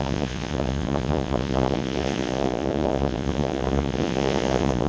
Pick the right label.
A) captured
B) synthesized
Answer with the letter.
B